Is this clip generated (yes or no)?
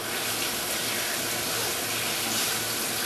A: no